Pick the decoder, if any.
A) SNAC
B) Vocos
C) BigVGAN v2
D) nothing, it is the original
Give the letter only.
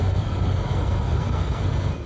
A